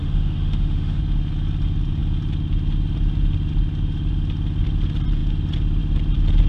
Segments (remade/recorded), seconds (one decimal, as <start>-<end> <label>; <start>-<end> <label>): 0.0-1.0 remade; 1.0-6.5 recorded